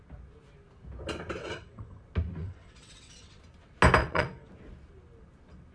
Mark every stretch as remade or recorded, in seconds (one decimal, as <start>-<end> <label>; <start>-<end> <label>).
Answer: 0.0-1.4 recorded; 1.4-2.0 remade; 2.0-2.4 recorded; 2.4-3.4 remade; 3.4-4.0 recorded; 4.0-4.5 remade; 4.5-5.7 recorded